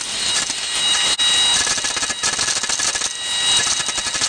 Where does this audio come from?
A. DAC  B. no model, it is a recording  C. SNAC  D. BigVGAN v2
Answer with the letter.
B